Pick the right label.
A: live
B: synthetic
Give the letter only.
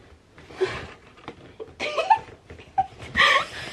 A